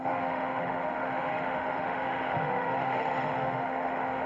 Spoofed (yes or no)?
yes